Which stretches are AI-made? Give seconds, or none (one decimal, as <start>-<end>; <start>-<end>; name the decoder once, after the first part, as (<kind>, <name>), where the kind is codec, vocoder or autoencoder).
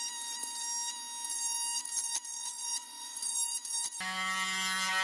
2.3-3.4 (vocoder, Vocos)